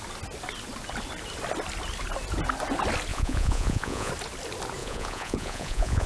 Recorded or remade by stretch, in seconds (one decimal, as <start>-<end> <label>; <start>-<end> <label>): 0.0-3.1 recorded; 3.1-4.1 remade; 4.1-4.8 recorded; 4.8-6.1 remade